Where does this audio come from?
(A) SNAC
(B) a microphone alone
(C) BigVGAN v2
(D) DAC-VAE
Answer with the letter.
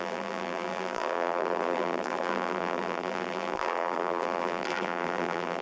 C